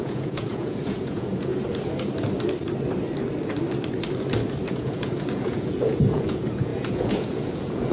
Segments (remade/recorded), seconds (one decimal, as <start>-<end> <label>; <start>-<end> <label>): 0.0-1.5 remade; 1.5-4.7 recorded; 4.7-7.9 remade